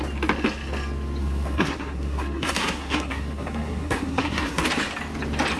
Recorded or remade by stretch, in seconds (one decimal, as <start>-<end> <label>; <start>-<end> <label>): 0.0-1.2 recorded; 1.2-4.6 remade; 4.6-5.6 recorded